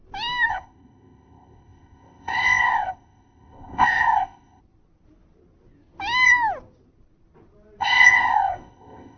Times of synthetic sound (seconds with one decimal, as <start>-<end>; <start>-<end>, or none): 0.5-4.6; 7.8-9.2

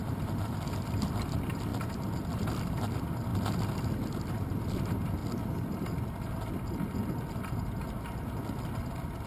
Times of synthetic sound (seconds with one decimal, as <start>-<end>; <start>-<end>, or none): 0.0-3.3; 3.9-5.2; 8.8-9.3

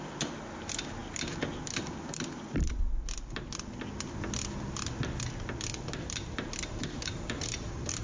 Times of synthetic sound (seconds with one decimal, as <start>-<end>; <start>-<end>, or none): 6.7-8.0

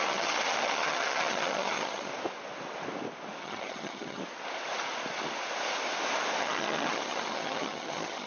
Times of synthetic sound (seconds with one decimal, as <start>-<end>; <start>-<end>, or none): 0.0-2.1; 3.4-4.2; 6.4-8.3

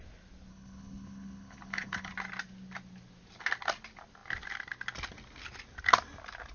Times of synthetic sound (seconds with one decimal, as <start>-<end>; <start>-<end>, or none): 0.5-2.1